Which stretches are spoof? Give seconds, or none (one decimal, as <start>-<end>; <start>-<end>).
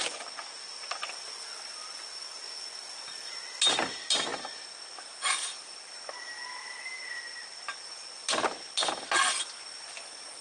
none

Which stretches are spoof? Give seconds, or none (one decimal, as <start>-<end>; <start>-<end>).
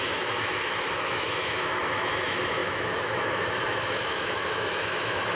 0.0-5.4